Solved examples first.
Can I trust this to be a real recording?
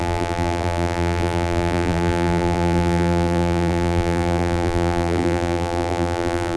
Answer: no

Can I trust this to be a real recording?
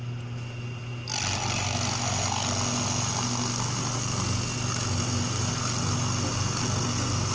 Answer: yes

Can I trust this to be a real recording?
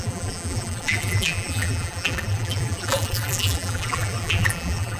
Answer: no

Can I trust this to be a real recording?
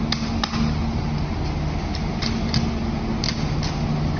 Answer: yes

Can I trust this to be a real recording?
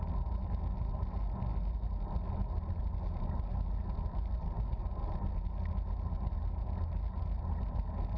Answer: yes